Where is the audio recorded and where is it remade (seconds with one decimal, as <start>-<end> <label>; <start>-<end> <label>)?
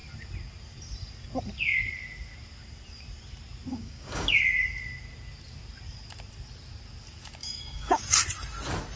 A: 0.0-3.7 recorded; 3.7-4.4 remade; 4.4-7.4 recorded; 7.4-8.0 remade; 8.0-9.0 recorded